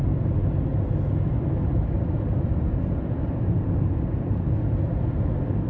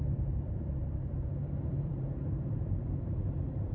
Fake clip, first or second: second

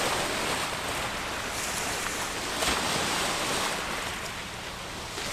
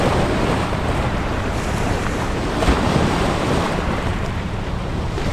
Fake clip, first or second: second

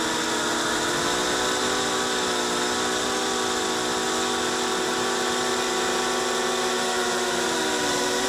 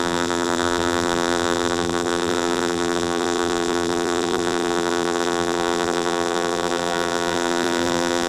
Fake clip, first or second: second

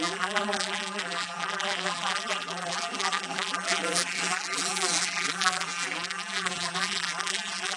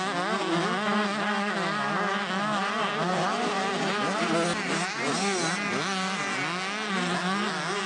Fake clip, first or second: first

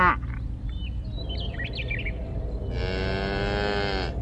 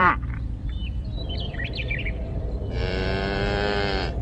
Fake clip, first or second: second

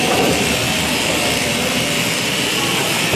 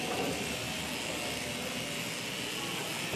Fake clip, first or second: first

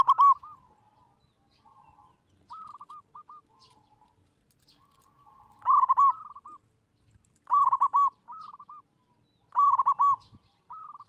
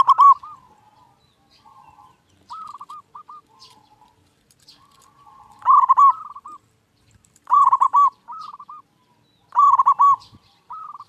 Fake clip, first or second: second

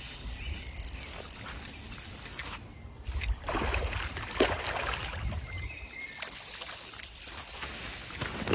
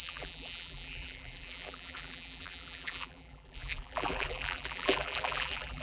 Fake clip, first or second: second